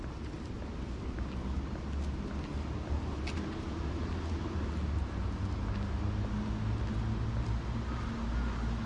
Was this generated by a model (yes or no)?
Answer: no